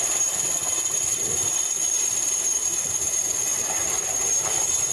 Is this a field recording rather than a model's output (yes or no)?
yes